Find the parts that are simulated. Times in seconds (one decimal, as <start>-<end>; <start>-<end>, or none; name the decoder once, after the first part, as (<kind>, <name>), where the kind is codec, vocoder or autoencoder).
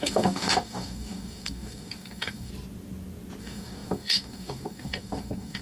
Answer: 0.0-2.5 (codec, DAC); 3.4-5.6